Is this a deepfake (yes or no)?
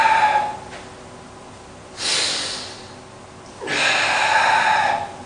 no